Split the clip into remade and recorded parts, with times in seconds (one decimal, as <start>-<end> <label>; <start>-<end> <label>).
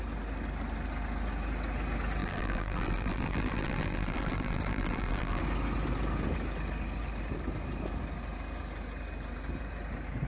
0.0-2.2 recorded; 2.2-5.4 remade; 5.4-10.3 recorded